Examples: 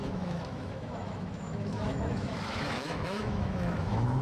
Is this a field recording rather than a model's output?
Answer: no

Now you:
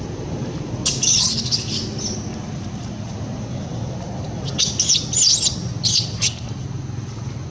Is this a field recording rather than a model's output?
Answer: yes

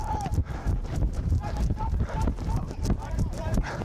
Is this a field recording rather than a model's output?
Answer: no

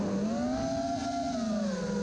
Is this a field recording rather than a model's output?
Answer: yes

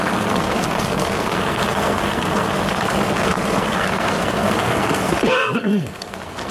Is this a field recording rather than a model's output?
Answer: no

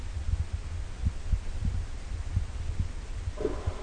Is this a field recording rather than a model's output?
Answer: yes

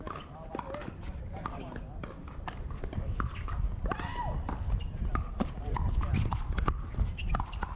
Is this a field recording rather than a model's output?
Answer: yes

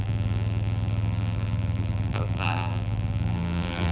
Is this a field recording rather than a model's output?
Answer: no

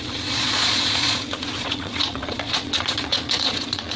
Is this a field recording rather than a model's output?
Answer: no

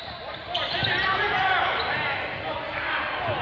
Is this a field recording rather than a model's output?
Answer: yes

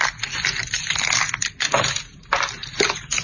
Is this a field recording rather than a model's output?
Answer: yes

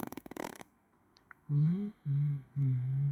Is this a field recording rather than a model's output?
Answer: no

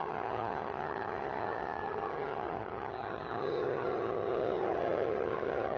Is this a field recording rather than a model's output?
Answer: no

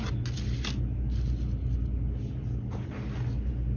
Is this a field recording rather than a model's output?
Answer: yes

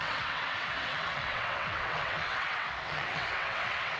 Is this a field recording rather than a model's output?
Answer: no